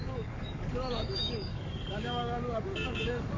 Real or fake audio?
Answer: fake